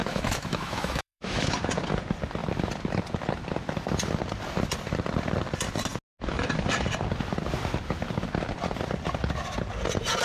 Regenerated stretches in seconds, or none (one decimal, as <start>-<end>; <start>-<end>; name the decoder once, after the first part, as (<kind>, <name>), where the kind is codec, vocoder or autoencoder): 0.0-1.5 (autoencoder, DAC-VAE)